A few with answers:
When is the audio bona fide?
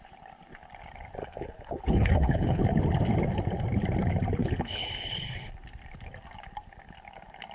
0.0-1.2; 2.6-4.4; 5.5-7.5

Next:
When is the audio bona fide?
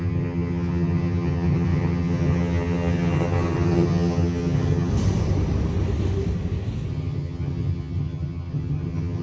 4.9-6.9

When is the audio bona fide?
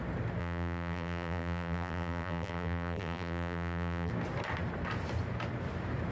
0.0-0.4; 4.1-6.1